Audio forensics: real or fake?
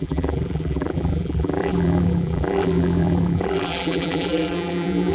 fake